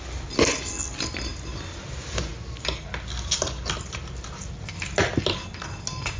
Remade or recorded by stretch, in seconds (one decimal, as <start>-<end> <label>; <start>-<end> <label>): 0.0-6.2 recorded